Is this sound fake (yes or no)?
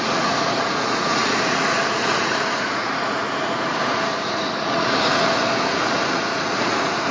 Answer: yes